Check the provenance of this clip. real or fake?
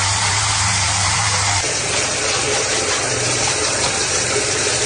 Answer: fake